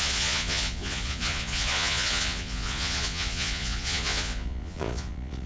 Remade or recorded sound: remade